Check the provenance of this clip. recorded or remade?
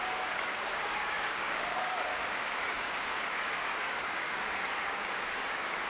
remade